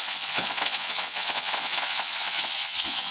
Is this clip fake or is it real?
fake